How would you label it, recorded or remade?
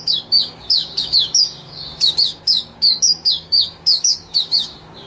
remade